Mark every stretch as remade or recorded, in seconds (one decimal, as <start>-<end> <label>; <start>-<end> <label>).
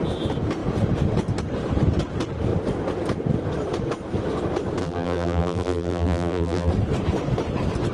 0.0-4.8 recorded; 4.8-6.7 remade; 6.7-7.9 recorded